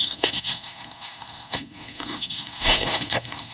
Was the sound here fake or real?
fake